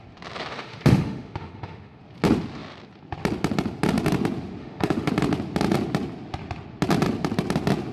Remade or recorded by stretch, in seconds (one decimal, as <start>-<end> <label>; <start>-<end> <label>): 0.0-0.5 recorded; 0.5-2.0 remade; 2.0-4.6 recorded; 4.6-5.1 remade; 5.1-7.9 recorded